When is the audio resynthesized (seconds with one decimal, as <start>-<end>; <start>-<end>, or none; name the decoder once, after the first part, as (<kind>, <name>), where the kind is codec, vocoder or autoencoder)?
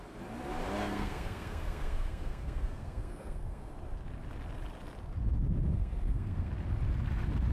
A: 0.8-3.7 (codec, SNAC); 5.7-6.5